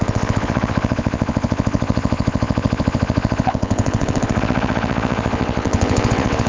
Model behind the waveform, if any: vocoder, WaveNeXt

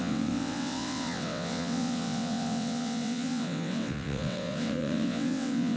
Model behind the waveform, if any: vocoder, WaveNeXt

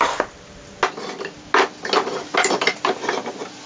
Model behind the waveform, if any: none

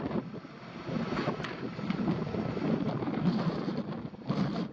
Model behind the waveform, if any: none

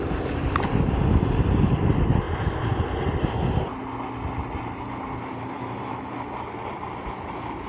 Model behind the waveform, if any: none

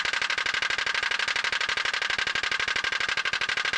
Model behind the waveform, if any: none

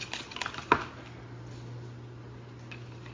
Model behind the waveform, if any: none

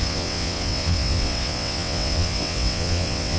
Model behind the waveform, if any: vocoder, WaveNeXt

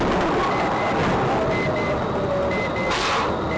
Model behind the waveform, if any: none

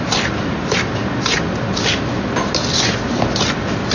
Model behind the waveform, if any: none